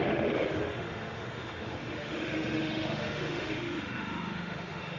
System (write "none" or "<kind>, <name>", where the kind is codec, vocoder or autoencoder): autoencoder, DAC-VAE